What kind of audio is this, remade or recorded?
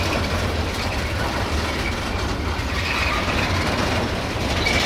recorded